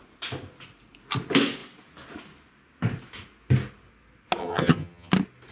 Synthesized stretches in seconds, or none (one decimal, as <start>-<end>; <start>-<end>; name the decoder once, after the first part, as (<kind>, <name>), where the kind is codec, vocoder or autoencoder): 4.4-5.1 (vocoder, HiFi-GAN)